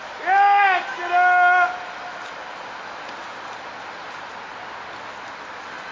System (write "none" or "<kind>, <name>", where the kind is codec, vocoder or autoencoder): none